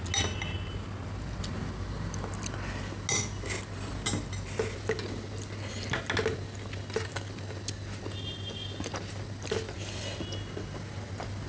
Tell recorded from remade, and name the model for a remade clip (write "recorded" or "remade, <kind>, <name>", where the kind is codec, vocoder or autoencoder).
recorded